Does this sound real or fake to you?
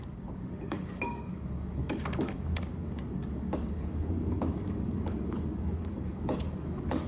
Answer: fake